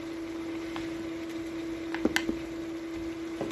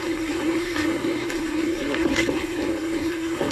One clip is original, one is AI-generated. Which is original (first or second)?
first